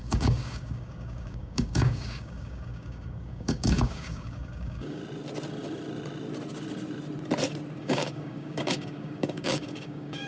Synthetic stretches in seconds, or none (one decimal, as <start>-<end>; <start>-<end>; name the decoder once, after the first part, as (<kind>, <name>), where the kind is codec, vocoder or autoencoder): 0.0-5.0 (codec, DAC); 7.8-10.3